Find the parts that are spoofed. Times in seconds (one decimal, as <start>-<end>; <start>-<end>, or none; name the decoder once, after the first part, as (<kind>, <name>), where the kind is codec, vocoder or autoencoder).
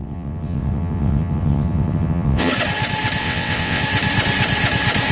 0.0-2.5 (vocoder, WaveNeXt); 3.2-3.8